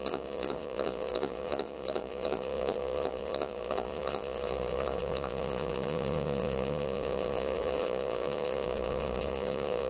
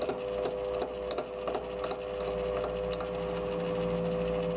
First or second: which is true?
second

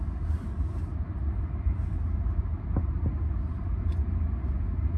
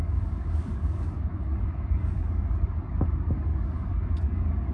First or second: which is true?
first